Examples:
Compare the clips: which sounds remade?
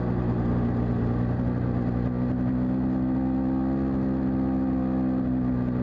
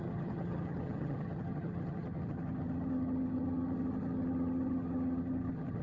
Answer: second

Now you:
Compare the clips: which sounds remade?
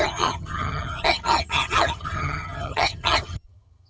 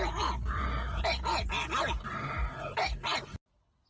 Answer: first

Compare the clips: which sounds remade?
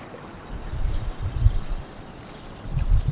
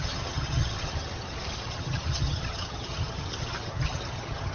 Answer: second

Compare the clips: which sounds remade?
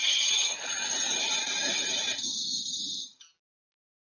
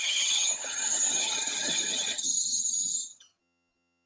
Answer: second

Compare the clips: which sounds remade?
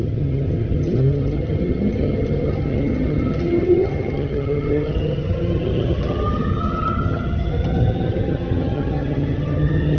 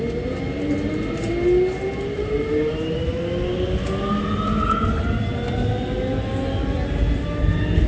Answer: first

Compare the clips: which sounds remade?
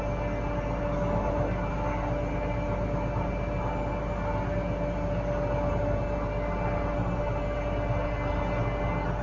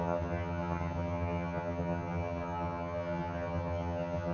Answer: second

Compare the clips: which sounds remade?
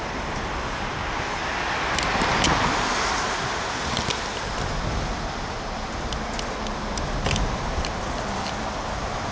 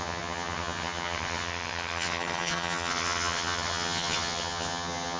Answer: second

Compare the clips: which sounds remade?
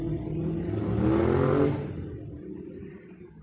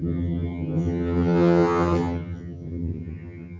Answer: second